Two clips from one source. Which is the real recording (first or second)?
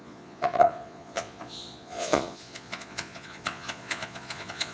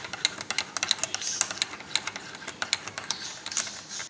second